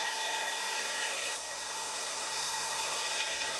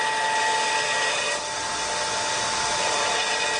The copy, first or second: first